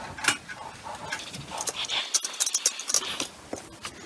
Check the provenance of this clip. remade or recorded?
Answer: recorded